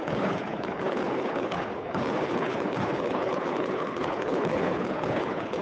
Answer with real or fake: fake